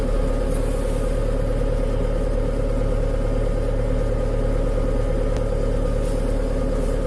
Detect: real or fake real